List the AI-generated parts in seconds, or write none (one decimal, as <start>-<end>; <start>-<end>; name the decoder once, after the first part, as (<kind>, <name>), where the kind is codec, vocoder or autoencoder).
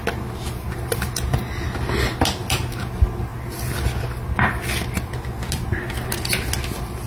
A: none